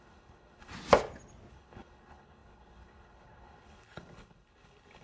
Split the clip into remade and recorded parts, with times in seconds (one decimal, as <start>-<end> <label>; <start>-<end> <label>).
0.0-0.7 remade; 0.7-1.5 recorded; 1.5-5.0 remade